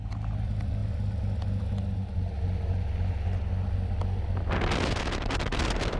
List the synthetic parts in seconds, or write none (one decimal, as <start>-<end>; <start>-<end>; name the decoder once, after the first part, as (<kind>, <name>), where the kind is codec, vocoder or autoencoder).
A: none

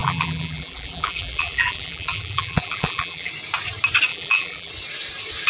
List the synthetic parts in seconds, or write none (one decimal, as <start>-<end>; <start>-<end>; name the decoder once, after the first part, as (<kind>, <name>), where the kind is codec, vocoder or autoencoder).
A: 0.0-3.3 (vocoder, BigVGAN v2); 4.1-4.7

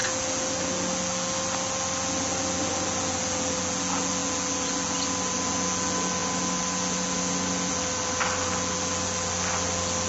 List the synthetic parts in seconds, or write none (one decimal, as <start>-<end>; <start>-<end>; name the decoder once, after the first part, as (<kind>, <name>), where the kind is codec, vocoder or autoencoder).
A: none

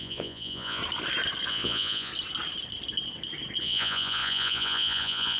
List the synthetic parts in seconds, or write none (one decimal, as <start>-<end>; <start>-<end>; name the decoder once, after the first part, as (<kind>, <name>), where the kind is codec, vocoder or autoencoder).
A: 0.0-0.8 (vocoder, Vocos); 1.5-2.1; 3.6-5.4

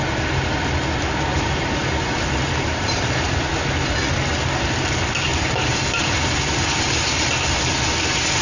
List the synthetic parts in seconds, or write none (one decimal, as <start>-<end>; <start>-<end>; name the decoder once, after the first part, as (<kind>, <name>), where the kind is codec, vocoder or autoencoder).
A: 1.3-3.5 (vocoder, BigVGAN v2); 5.3-6.3

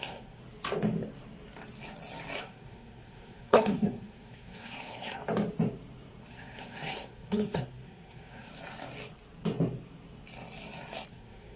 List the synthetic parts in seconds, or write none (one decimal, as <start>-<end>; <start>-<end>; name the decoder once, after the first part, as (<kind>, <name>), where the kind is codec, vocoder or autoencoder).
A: 0.0-0.4 (codec, SNAC); 2.4-5.2; 6.3-8.5; 11.1-11.6

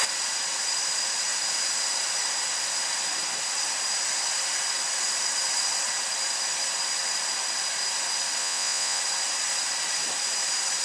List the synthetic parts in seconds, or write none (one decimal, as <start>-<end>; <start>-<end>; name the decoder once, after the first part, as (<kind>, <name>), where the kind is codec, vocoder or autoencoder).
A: 8.4-9.0 (vocoder, Vocos)